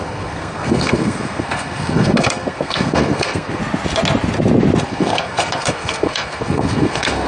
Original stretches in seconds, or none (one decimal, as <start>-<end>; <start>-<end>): 3.6-4.8